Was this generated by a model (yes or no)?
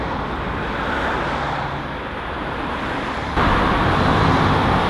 no